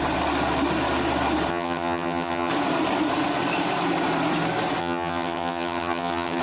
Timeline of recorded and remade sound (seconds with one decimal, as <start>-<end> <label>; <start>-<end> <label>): 0.0-1.5 recorded; 1.5-2.5 remade; 2.5-4.8 recorded; 4.8-6.4 remade